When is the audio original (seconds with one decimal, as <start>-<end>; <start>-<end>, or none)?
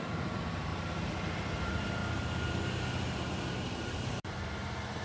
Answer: 0.7-1.6; 2.0-3.8